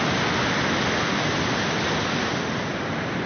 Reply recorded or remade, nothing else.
recorded